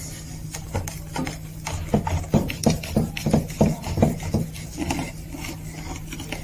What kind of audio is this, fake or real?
fake